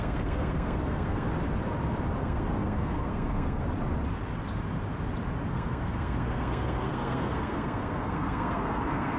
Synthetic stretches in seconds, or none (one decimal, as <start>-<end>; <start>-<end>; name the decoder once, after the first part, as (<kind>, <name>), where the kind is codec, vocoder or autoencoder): 0.0-1.3 (codec, SNAC); 2.2-3.6; 5.5-9.2